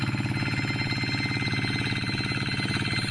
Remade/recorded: recorded